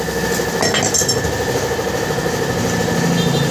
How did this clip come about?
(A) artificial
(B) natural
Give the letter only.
B